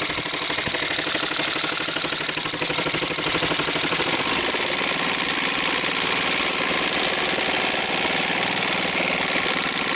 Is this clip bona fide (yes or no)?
yes